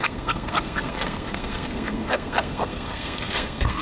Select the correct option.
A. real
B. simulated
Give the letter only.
B